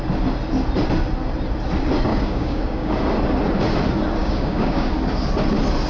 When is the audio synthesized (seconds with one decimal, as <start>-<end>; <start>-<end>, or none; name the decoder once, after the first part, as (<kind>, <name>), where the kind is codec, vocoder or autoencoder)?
2.1-2.9 (codec, DAC); 4.2-4.9